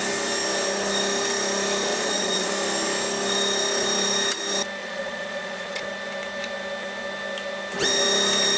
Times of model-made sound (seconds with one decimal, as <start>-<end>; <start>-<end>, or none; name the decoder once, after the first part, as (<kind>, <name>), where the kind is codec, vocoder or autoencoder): 1.9-2.5 (vocoder, Vocos); 4.8-5.8